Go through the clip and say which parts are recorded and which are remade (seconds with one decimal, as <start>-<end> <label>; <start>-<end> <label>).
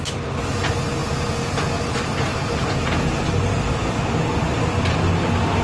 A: 0.0-1.0 recorded; 1.0-1.8 remade; 1.8-2.3 recorded; 2.3-3.1 remade; 3.1-5.6 recorded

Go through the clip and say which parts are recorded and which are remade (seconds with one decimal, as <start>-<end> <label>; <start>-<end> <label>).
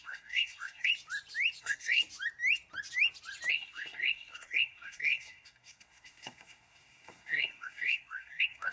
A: 0.0-0.9 remade; 0.9-1.6 recorded; 1.6-2.0 remade; 2.0-3.5 recorded; 3.5-8.7 remade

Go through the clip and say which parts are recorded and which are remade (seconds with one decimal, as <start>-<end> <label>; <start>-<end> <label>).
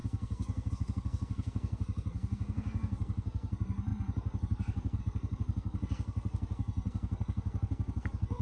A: 0.0-8.4 remade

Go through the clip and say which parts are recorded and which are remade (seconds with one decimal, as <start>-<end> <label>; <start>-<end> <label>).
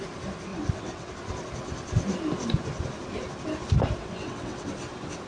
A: 0.0-0.5 recorded; 0.5-1.1 remade; 1.1-4.0 recorded; 4.0-4.7 remade; 4.7-5.3 recorded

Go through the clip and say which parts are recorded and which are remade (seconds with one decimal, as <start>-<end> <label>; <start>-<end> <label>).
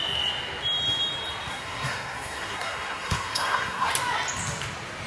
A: 0.0-1.5 recorded; 1.5-3.9 remade; 3.9-5.1 recorded